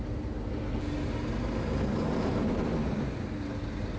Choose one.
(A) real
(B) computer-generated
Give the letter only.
A